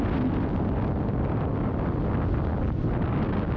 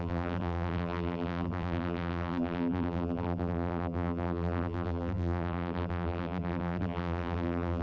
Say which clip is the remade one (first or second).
second